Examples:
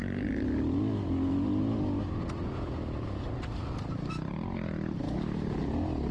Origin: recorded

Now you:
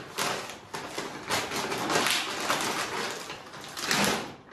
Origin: recorded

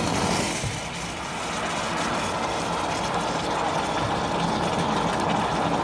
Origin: recorded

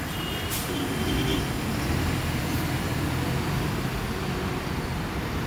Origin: remade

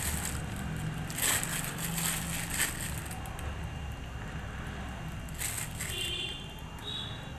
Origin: recorded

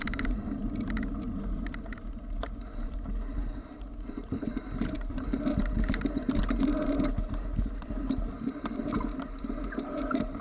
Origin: remade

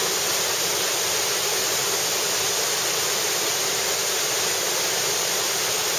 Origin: recorded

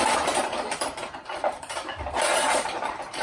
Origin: remade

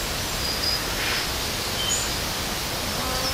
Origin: recorded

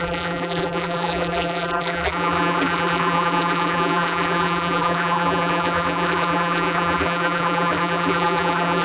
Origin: remade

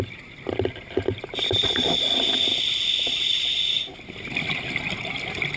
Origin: recorded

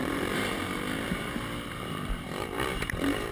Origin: remade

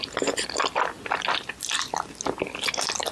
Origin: recorded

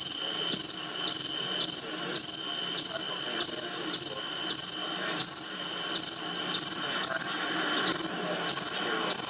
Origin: remade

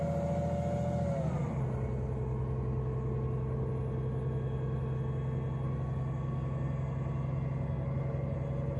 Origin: recorded